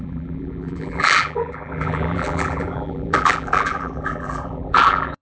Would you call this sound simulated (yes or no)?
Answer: yes